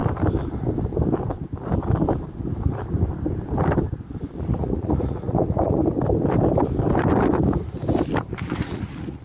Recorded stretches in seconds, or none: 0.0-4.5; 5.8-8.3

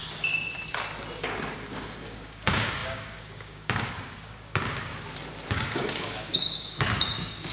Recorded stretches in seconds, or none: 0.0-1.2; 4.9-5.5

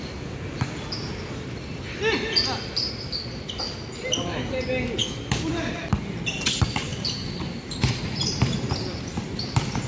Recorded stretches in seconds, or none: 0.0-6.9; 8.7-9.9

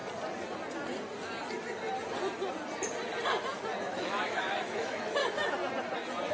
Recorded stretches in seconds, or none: 0.0-3.8; 5.2-6.3